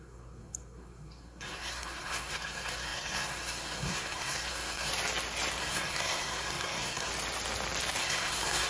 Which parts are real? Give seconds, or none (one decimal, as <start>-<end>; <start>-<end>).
4.9-5.6; 7.1-8.0